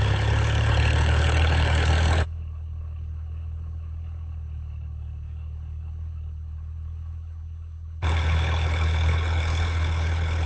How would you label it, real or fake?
fake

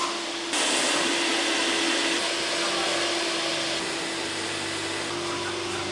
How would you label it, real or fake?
real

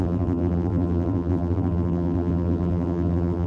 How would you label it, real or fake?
fake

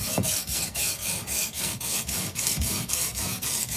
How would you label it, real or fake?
fake